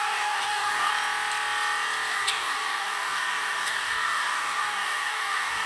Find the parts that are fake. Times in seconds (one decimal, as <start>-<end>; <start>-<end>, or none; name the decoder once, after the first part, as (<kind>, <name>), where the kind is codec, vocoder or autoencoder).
0.0-0.9 (codec, DAC); 2.1-5.7